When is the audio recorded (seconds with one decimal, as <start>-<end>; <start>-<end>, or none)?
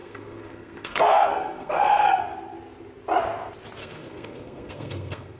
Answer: 2.2-3.8